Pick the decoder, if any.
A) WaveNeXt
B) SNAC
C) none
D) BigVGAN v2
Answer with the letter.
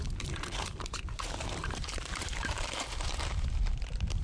D